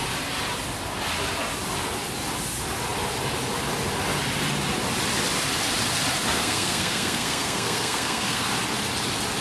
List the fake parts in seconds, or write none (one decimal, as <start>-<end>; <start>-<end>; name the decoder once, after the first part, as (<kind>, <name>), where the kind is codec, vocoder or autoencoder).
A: 6.3-8.5 (codec, SNAC)